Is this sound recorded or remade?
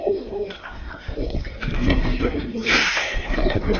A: remade